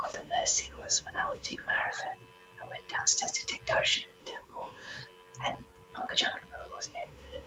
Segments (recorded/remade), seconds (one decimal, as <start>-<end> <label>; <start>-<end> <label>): 0.0-1.8 remade; 1.8-4.2 recorded; 4.2-5.0 remade; 5.0-6.8 recorded; 6.8-7.5 remade